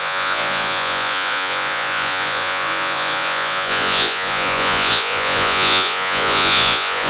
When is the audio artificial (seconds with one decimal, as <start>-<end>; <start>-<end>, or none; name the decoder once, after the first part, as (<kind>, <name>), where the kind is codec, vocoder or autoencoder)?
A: 0.0-7.1 (vocoder, Vocos)